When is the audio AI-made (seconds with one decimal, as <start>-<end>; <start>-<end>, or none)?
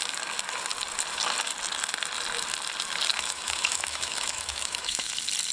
3.1-5.1